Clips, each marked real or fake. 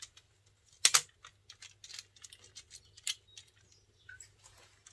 real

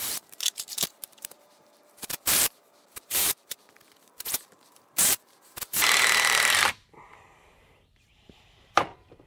fake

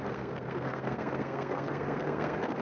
fake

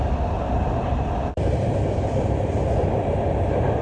fake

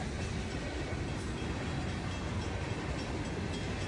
real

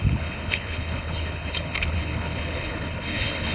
fake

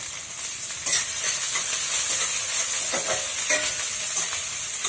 real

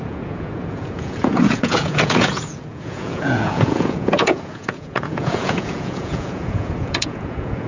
fake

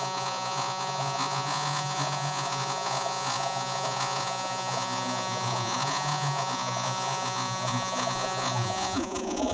fake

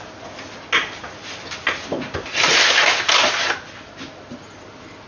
real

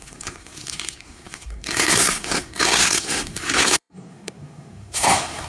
fake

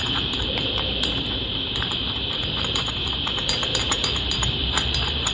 fake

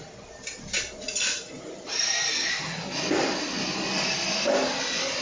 real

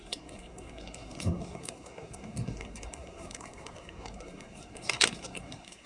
fake